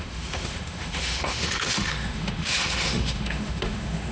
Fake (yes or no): yes